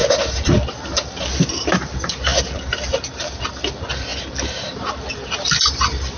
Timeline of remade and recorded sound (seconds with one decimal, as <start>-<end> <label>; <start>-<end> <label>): 0.0-1.2 recorded; 1.2-4.1 remade; 4.1-4.9 recorded; 4.9-6.2 remade